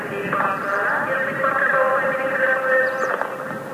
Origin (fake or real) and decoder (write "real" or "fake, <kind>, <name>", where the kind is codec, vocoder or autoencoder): real